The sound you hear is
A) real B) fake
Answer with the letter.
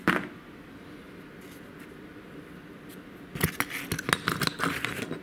A